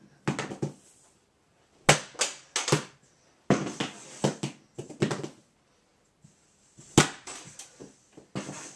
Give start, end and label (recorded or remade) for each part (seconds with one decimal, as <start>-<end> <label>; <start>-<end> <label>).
0.0-8.8 recorded